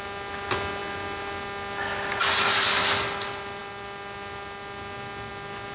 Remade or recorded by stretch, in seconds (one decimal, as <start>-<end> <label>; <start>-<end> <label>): 0.0-5.7 recorded